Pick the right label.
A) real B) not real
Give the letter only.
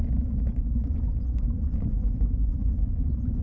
B